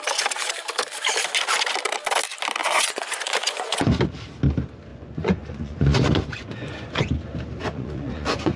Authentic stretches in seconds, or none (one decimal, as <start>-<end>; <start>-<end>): 0.0-2.6; 4.0-4.9; 7.1-7.6